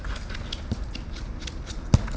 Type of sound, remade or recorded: recorded